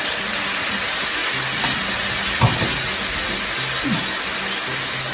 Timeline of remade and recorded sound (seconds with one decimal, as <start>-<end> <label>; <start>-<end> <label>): 0.0-5.1 recorded

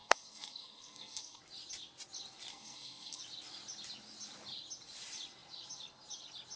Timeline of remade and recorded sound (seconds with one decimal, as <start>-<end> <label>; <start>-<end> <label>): 0.0-1.4 remade; 1.4-2.5 recorded; 2.5-3.2 remade; 3.2-6.6 recorded

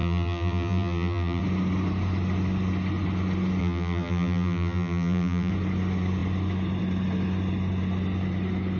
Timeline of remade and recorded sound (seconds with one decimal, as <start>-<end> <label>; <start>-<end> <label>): 0.0-1.4 remade; 1.4-3.6 recorded; 3.6-5.5 remade; 5.5-8.8 recorded

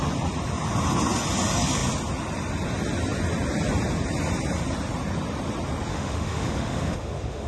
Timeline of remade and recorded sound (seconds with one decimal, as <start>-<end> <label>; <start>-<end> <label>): 0.0-5.9 recorded; 5.9-7.5 remade

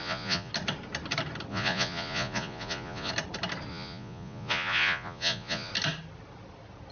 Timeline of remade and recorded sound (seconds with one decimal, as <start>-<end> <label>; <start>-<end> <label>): 0.0-0.5 remade; 0.5-1.5 recorded; 1.5-3.1 remade; 3.1-3.7 recorded; 3.7-5.7 remade; 5.7-6.9 recorded